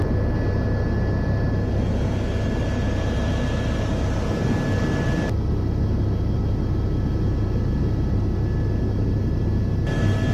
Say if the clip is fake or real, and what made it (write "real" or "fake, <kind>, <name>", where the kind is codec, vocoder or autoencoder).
real